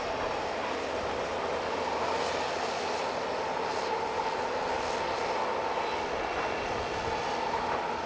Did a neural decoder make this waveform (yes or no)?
no